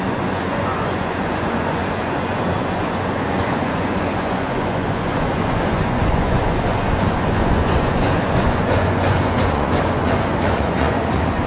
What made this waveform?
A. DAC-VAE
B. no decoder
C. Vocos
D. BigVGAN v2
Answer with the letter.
C